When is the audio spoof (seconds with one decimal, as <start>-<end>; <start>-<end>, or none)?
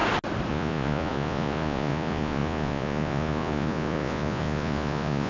0.5-5.3